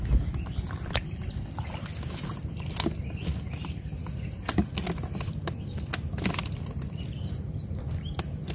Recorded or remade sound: recorded